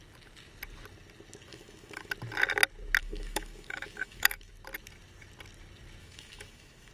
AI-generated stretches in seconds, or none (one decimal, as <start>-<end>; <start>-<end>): 1.5-2.1; 3.0-4.5; 6.0-6.9